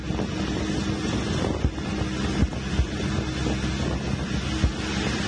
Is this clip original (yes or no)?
yes